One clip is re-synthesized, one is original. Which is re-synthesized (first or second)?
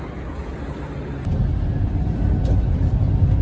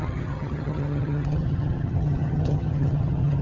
second